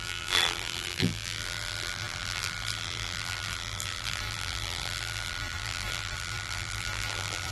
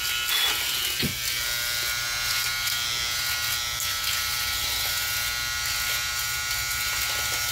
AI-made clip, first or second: first